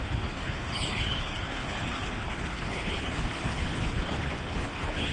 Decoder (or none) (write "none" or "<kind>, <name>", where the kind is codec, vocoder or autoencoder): codec, HILCodec